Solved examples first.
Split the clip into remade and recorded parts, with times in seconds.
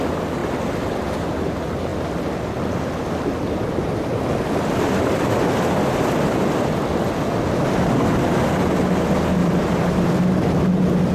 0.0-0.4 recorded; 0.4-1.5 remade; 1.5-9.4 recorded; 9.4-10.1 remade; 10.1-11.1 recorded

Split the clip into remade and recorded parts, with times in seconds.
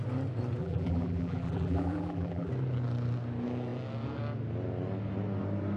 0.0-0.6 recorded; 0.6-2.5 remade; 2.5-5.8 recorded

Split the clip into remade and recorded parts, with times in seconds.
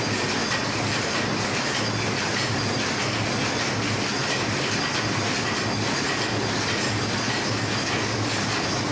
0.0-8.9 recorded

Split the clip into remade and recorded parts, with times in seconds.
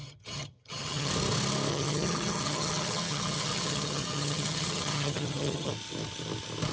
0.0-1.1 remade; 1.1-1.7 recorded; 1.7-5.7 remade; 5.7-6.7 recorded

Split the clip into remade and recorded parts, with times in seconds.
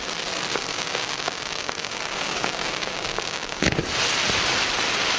0.0-0.7 recorded; 0.7-3.8 remade; 3.8-5.2 recorded